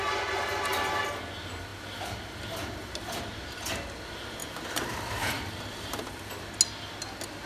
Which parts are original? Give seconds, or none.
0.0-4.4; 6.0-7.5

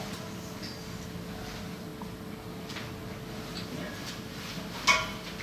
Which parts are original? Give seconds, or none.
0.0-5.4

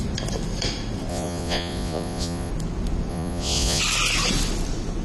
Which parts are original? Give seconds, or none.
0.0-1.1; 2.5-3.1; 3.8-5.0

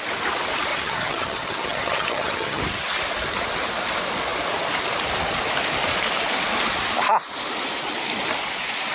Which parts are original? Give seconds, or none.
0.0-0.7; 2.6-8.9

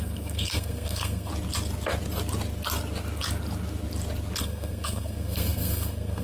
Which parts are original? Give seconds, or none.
1.3-4.4

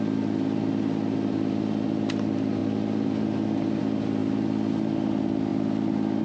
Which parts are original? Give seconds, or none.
0.0-6.2

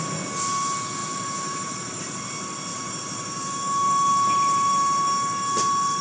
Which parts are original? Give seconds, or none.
0.0-1.0; 2.0-2.7; 3.6-6.0

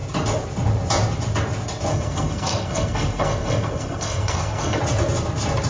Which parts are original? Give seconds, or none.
0.0-1.9; 4.8-5.7